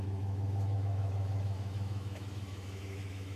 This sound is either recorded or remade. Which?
remade